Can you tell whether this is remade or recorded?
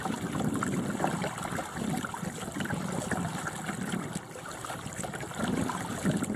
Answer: recorded